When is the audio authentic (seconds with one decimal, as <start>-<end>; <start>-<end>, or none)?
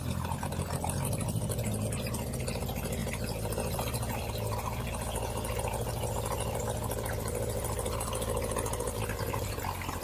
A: 0.0-10.0